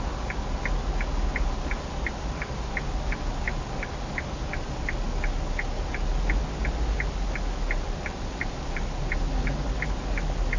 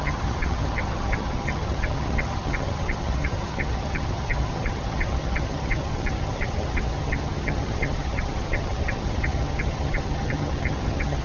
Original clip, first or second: first